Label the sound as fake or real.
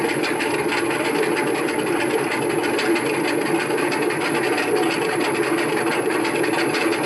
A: real